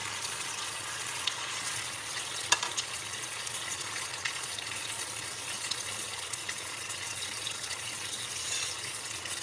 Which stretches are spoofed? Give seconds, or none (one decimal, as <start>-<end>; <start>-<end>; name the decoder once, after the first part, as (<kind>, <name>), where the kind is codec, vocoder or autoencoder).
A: 0.0-9.4 (vocoder, Vocos)